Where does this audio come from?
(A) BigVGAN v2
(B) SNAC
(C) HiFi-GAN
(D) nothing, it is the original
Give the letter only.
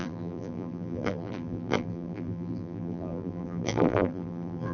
A